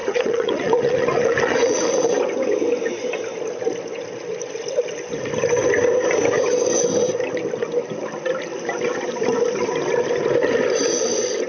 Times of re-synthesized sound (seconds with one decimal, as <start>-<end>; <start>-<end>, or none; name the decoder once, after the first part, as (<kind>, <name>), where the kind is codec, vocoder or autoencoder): 0.0-2.1 (vocoder, Vocos)